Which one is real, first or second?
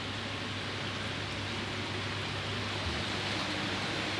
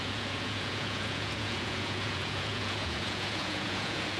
first